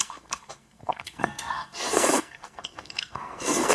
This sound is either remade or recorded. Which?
remade